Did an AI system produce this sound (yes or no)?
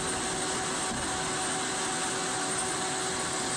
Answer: no